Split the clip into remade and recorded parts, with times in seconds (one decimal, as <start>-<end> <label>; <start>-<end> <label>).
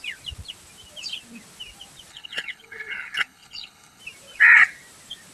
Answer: 0.0-2.1 recorded; 2.1-4.0 remade; 4.0-5.3 recorded